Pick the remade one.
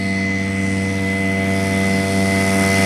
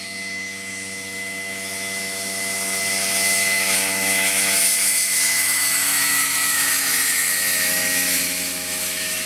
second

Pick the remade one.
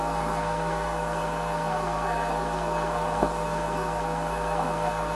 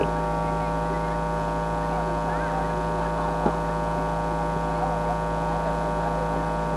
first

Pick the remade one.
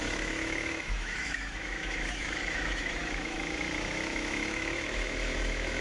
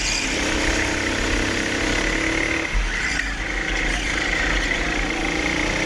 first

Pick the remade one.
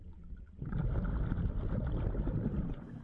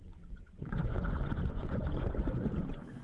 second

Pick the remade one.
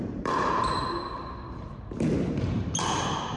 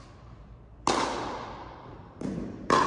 first